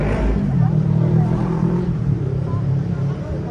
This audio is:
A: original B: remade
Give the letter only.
B